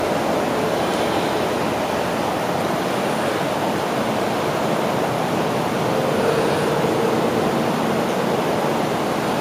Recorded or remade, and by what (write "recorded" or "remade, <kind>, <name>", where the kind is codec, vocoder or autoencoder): recorded